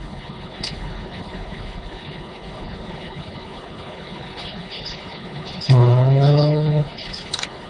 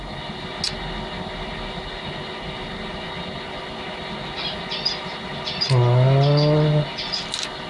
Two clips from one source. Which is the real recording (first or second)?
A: second